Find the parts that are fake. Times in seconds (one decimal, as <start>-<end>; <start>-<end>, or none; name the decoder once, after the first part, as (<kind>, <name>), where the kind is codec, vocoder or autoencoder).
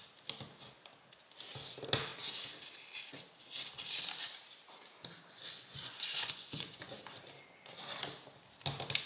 5.4-6.9 (vocoder, Vocos)